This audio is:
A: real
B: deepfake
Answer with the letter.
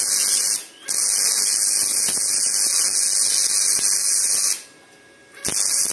A